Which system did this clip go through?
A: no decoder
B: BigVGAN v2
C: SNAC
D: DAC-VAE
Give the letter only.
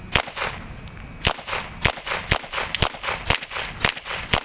A